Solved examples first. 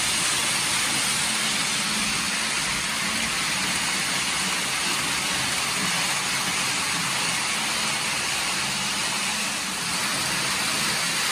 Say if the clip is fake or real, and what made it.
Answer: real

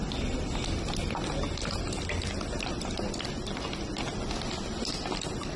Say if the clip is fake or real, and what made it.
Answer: real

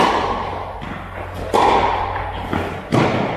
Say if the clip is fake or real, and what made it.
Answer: real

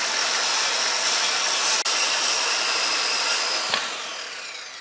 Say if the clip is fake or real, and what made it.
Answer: real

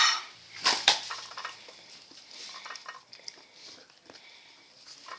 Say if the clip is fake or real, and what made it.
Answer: fake, vocoder, BigVGAN v2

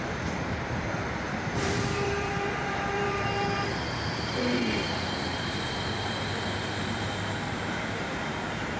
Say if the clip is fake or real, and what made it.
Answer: fake, vocoder, BigVGAN v2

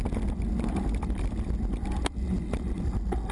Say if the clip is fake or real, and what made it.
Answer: real